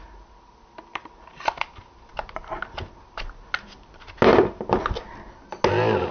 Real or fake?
real